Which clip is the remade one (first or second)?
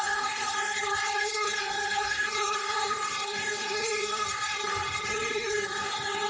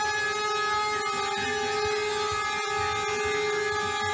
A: first